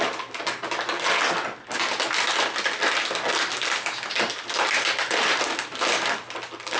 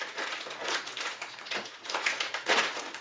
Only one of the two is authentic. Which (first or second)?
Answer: first